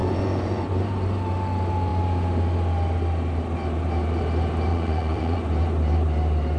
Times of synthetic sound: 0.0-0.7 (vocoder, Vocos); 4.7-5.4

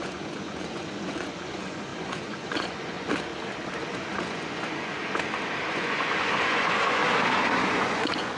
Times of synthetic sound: 0.0-3.3 (vocoder, Vocos); 3.8-5.0; 5.7-7.0; 7.7-8.4

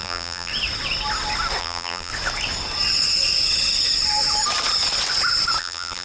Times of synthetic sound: 0.0-0.5 (vocoder, BigVGAN v2); 1.6-2.1; 5.6-6.0

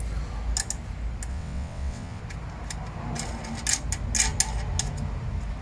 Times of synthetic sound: 1.3-2.2 (vocoder, WaveNeXt)

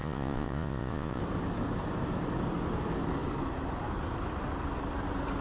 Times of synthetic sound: 0.0-1.2 (vocoder, Vocos)

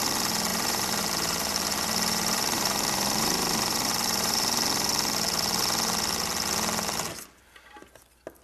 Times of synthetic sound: 0.5-4.9 (vocoder, BigVGAN v2)